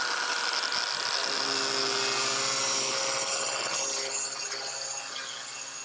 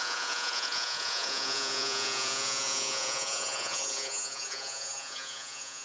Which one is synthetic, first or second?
second